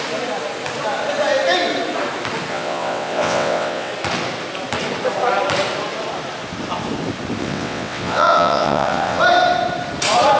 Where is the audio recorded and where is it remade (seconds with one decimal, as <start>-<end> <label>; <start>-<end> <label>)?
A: 0.0-2.5 recorded; 2.5-3.9 remade; 3.9-7.4 recorded; 7.4-9.2 remade; 9.2-10.4 recorded